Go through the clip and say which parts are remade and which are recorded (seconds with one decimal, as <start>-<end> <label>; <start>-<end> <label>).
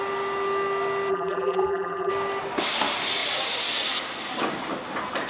0.0-1.1 recorded; 1.1-2.1 remade; 2.1-5.3 recorded